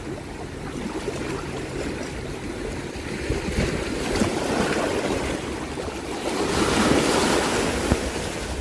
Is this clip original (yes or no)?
yes